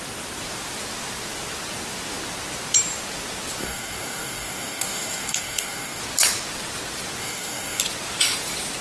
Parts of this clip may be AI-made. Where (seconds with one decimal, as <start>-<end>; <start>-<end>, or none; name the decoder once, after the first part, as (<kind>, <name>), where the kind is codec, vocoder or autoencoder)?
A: 3.6-6.0 (codec, DAC); 7.2-7.8

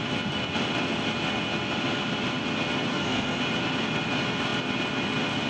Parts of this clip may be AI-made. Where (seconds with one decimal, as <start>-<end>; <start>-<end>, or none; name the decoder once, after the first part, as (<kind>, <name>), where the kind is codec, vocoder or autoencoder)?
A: 2.9-3.4 (codec, SNAC)

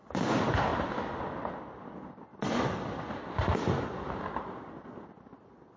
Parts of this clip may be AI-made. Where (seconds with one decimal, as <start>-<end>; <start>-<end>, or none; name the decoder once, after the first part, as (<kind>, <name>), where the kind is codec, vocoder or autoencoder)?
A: none

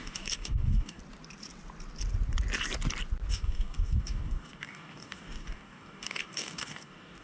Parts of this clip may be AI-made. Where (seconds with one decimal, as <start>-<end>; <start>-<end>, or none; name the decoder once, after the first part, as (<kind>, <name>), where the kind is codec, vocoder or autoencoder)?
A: 0.0-1.0 (codec, DAC); 3.3-7.2

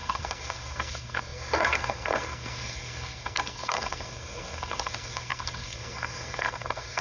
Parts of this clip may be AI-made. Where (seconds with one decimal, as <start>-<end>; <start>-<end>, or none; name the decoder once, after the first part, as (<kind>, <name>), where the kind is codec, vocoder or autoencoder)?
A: 0.0-7.0 (codec, SNAC)

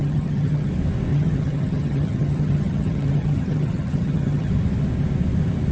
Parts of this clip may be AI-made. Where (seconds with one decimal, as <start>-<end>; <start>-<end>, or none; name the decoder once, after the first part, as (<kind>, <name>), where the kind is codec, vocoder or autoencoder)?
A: 0.0-0.7 (vocoder, HiFi-GAN); 1.1-4.5

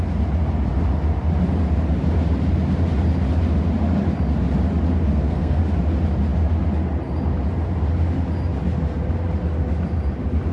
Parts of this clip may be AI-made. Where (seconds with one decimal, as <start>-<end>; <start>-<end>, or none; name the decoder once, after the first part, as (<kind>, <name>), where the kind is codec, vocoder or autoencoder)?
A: 5.1-5.6 (codec, SNAC)